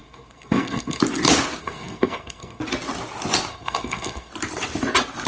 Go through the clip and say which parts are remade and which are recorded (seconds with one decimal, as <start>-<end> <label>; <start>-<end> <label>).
0.0-1.0 remade; 1.0-1.6 recorded; 1.6-2.6 remade; 2.6-3.5 recorded; 3.5-4.3 remade; 4.3-5.3 recorded